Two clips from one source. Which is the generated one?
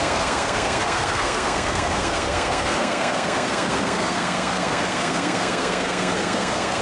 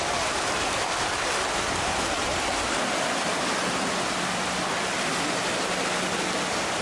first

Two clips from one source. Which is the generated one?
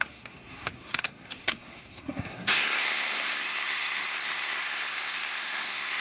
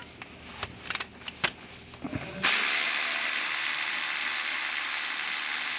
first